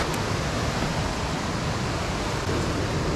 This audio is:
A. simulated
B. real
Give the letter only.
B